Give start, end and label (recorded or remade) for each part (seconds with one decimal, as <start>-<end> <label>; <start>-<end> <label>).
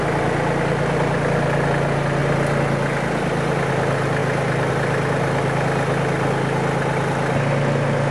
0.0-8.1 recorded